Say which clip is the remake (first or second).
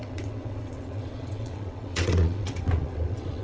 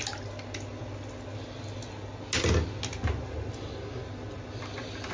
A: first